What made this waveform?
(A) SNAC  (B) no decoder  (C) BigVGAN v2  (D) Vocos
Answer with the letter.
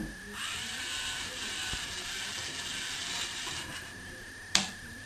C